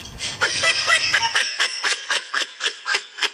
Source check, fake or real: fake